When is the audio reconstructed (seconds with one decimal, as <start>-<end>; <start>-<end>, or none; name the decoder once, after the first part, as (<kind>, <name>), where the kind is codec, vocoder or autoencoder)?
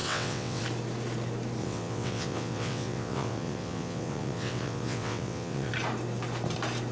0.0-0.6 (vocoder, WaveNeXt); 1.6-5.7